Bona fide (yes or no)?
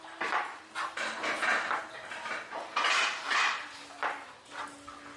yes